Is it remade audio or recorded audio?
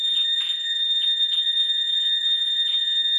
remade